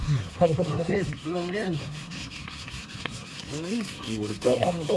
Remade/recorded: remade